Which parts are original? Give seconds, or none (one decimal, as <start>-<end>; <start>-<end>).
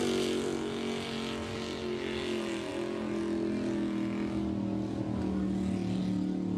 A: 0.0-6.6